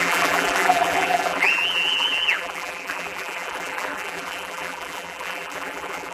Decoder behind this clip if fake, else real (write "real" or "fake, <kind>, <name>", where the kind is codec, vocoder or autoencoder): fake, vocoder, BigVGAN v2